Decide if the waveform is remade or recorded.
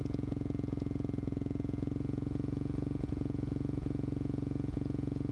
remade